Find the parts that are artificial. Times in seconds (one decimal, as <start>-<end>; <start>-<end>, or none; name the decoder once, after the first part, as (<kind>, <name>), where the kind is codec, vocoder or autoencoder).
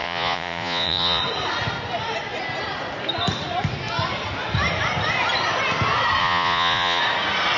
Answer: 0.0-1.2 (vocoder, Vocos); 6.2-7.0